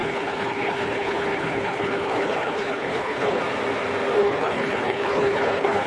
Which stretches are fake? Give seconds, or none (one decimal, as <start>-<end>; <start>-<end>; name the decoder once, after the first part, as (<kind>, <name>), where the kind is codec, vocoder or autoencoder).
0.0-3.4 (codec, HILCodec); 4.2-5.9